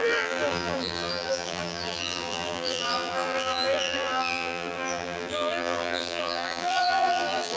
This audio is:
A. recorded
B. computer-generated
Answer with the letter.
B